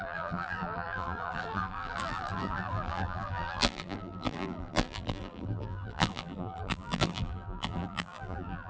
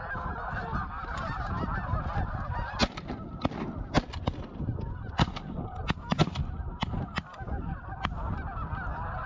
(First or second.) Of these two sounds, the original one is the second